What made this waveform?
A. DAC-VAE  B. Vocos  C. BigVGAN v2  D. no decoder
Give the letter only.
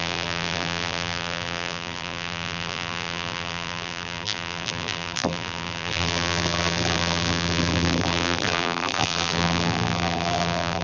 C